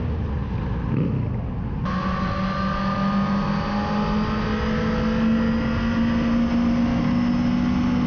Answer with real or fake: real